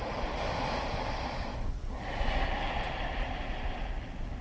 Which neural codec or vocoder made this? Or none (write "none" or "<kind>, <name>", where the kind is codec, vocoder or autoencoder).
none